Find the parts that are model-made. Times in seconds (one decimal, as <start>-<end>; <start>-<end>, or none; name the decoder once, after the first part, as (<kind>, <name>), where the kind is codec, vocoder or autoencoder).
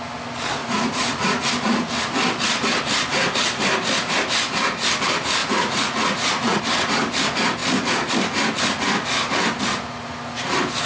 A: 0.6-1.5 (vocoder, Vocos); 5.4-6.6